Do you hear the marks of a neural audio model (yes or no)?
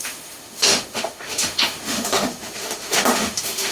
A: yes